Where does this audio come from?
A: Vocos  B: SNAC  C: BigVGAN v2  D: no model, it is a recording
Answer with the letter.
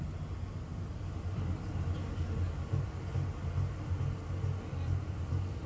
D